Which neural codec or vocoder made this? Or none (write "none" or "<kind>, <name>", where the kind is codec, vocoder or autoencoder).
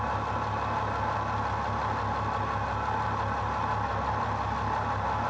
none